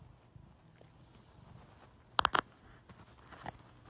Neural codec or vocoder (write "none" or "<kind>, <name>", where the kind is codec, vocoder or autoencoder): none